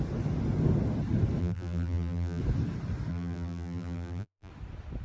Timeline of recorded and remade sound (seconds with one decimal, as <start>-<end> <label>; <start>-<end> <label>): 0.0-1.4 recorded; 1.4-2.4 remade; 2.4-3.1 recorded; 3.1-4.5 remade; 4.5-5.0 recorded